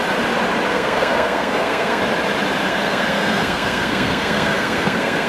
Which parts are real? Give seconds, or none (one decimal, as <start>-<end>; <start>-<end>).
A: 0.0-0.7; 2.0-2.7